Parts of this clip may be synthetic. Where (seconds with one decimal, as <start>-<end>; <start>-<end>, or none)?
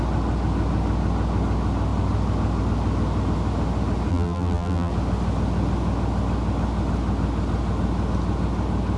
4.1-4.9